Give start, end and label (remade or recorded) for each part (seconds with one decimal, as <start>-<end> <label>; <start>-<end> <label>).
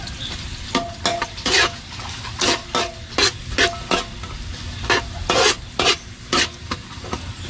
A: 0.0-7.5 recorded